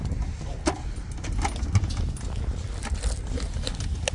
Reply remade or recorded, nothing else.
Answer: recorded